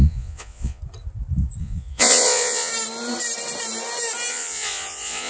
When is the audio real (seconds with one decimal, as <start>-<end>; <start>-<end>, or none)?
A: 0.8-1.6; 2.7-4.3